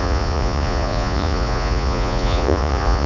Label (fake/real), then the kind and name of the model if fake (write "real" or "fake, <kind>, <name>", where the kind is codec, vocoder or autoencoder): fake, vocoder, Vocos